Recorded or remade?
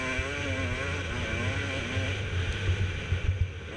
recorded